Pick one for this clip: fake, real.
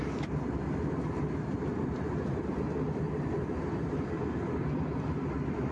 real